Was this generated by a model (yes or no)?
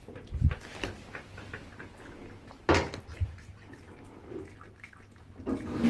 no